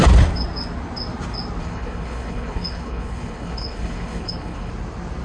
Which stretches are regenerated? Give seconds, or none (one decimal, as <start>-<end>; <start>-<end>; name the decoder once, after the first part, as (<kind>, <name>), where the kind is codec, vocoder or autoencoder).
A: 1.6-4.7 (codec, HILCodec)